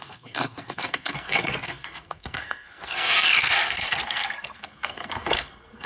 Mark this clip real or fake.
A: fake